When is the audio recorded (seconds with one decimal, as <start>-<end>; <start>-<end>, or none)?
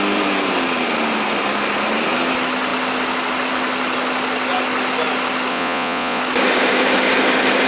0.0-5.5; 6.2-7.7